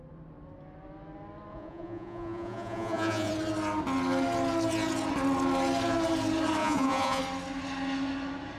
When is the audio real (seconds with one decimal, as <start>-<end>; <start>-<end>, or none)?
0.0-1.5; 3.3-6.6; 7.2-8.6